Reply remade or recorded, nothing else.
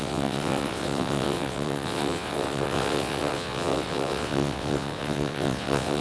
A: remade